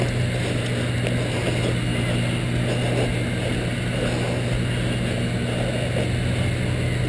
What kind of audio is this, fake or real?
real